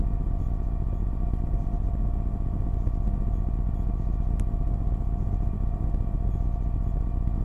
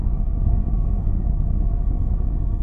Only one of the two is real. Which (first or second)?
first